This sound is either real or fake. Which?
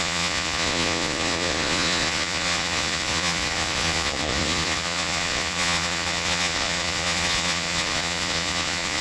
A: fake